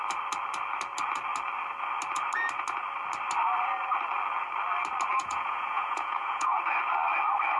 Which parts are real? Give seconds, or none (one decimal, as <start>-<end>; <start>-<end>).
0.0-5.1; 6.6-7.6